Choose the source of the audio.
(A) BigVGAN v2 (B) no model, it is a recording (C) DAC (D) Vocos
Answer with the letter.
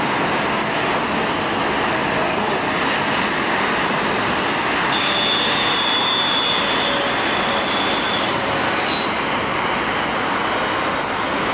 B